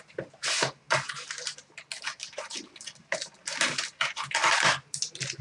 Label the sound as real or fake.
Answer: real